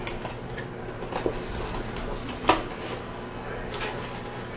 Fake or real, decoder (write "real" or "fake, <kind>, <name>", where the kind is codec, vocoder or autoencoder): real